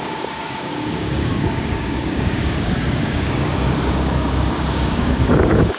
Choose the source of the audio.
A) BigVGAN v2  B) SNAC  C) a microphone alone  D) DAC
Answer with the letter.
D